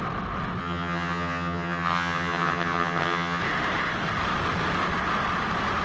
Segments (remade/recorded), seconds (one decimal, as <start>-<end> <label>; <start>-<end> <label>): 0.0-0.6 recorded; 0.6-3.4 remade; 3.4-5.8 recorded